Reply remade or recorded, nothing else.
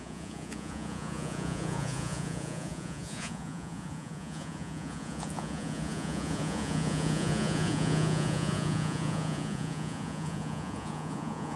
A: remade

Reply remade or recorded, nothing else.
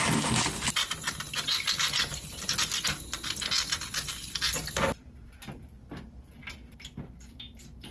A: recorded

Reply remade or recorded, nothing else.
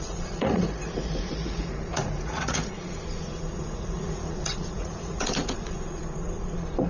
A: remade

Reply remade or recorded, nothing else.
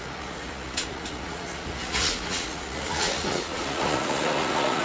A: remade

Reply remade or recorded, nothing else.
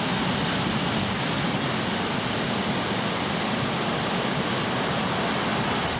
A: recorded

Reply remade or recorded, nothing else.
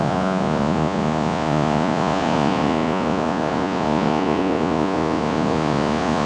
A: remade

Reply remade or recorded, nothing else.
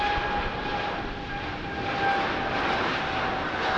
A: recorded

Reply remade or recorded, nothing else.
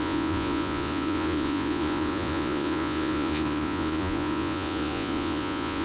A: remade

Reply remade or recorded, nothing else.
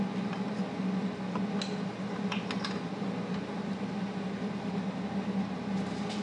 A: recorded